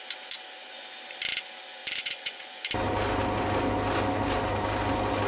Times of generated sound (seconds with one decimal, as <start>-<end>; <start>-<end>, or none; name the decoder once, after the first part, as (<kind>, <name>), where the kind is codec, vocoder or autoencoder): 1.8-2.6 (vocoder, Vocos)